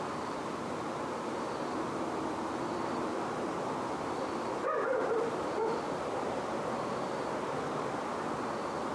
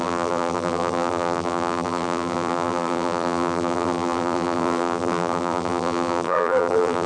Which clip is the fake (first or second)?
second